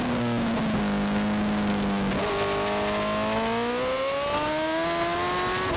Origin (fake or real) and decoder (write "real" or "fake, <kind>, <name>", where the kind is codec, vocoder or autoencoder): real